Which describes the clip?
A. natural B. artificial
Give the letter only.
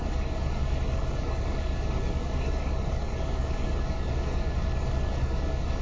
B